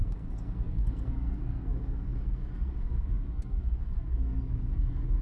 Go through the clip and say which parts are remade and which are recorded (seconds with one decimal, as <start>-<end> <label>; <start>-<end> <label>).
0.0-5.2 remade